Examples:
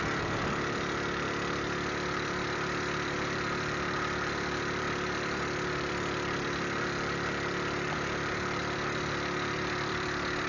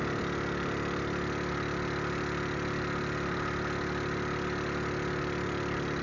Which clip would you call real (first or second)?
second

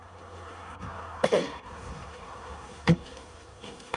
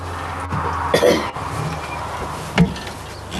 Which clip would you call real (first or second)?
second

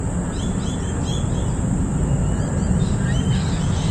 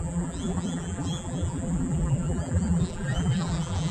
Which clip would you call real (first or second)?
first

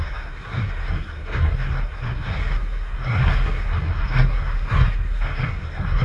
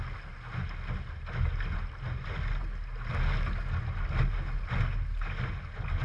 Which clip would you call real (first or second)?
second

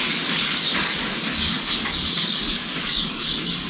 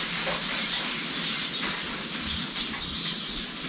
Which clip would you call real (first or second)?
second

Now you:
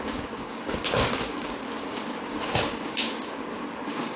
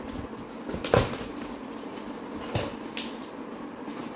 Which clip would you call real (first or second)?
second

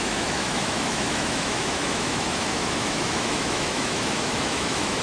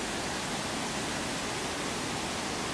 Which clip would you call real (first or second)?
second